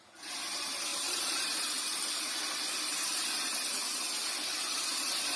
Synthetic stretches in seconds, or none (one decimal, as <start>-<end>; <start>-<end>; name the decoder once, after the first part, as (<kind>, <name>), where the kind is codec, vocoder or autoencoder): 0.9-2.4 (vocoder, BigVGAN v2)